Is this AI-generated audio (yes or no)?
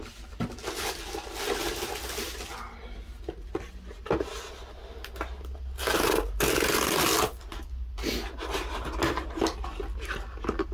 no